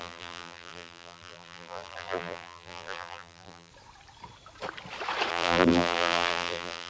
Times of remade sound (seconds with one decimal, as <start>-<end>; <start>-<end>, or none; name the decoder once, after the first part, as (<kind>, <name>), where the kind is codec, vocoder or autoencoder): 0.0-3.7 (vocoder, BigVGAN v2); 5.3-6.9